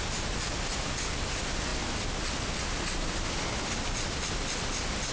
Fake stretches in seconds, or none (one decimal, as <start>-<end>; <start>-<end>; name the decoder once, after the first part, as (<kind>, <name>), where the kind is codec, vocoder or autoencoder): none